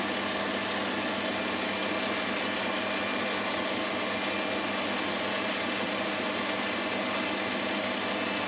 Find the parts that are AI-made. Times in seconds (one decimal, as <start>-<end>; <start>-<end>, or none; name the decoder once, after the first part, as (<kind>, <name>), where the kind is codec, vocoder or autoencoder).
none